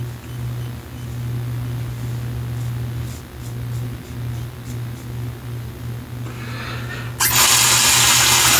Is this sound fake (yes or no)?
no